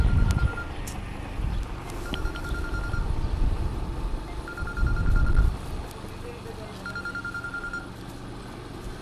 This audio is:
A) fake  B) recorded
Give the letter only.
B